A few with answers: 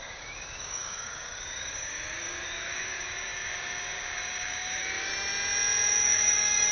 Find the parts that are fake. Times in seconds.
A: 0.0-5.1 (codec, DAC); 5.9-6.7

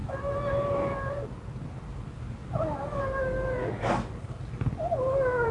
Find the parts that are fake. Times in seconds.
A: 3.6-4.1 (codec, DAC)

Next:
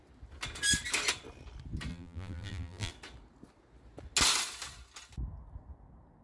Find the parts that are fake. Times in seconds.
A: 1.9-2.9 (vocoder, BigVGAN v2)